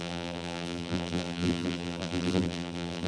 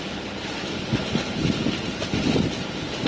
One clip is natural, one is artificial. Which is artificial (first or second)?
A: first